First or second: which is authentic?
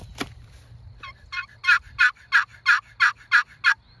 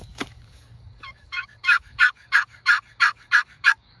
first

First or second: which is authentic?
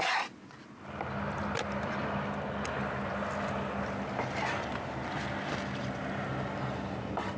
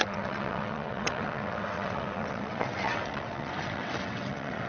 first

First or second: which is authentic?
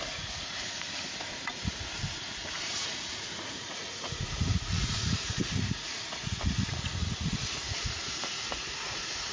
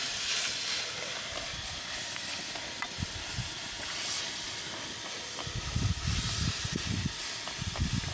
second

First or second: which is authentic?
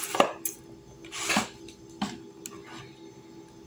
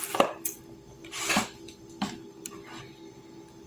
first